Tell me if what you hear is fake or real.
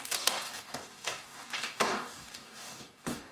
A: fake